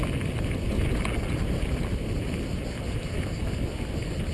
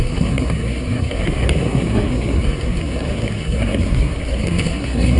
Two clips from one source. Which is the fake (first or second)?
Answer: second